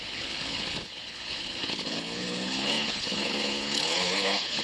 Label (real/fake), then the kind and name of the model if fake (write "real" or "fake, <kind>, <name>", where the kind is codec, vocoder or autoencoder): fake, codec, HILCodec